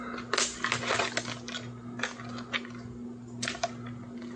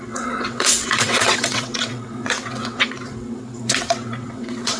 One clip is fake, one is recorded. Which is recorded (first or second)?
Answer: first